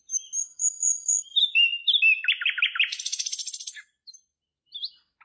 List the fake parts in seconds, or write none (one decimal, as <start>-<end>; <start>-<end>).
1.3-2.0